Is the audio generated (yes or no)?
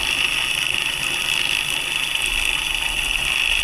no